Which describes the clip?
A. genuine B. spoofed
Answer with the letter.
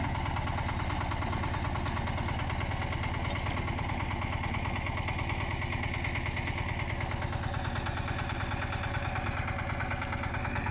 A